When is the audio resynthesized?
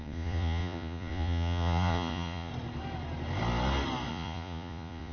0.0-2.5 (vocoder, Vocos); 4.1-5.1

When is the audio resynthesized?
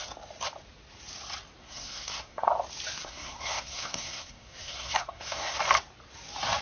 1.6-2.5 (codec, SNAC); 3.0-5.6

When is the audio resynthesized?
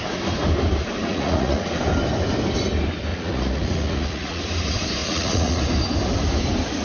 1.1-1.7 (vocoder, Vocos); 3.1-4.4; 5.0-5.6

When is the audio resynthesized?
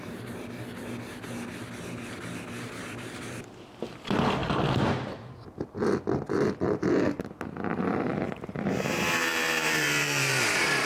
7.7-10.9 (vocoder, BigVGAN v2)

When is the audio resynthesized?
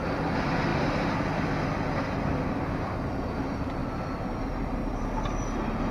none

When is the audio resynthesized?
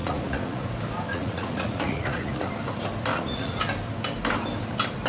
0.0-0.7 (vocoder, Vocos); 1.1-2.5; 3.1-3.6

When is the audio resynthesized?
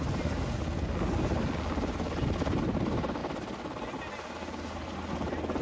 3.2-4.0 (vocoder, BigVGAN v2)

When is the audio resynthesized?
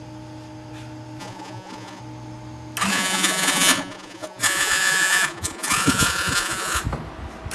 1.2-2.0 (vocoder, Vocos); 2.9-6.8